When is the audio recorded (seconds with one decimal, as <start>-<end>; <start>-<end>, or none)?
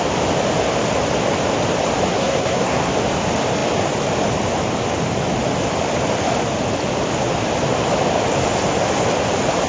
0.0-2.1; 2.9-9.7